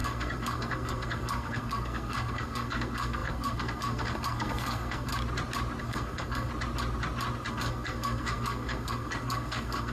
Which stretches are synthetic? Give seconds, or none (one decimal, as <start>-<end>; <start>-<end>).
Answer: 0.0-5.1; 5.8-6.5; 7.5-9.9